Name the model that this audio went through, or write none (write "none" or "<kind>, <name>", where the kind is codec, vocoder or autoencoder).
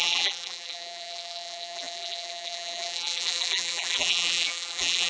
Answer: vocoder, BigVGAN v2